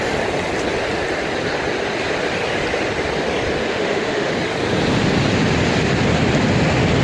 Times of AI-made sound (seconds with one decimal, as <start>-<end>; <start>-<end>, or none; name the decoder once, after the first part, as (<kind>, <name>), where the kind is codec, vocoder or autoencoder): 3.6-4.3 (autoencoder, DAC-VAE)